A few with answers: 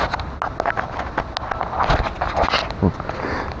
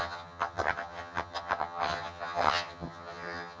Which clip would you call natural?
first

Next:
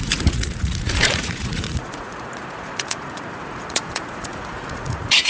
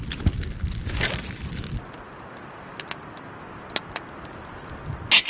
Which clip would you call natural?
second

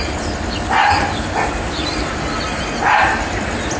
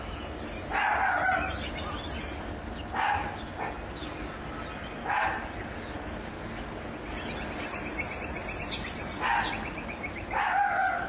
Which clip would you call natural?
second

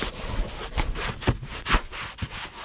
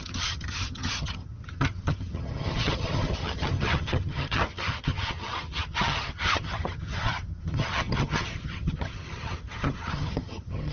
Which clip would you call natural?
first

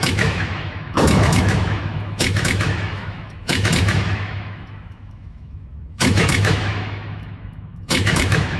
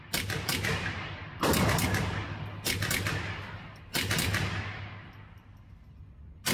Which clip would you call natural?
second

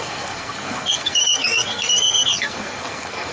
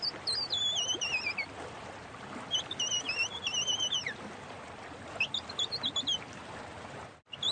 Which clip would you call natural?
second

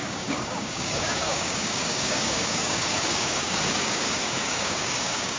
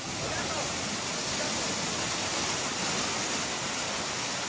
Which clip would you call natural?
second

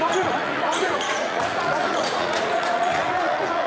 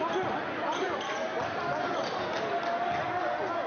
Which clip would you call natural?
second